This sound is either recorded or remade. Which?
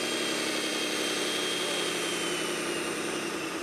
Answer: recorded